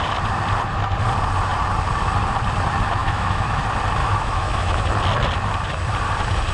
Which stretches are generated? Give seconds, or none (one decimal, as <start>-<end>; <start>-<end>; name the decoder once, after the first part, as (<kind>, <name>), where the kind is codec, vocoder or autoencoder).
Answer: 3.0-3.6 (autoencoder, DAC-VAE); 4.0-4.8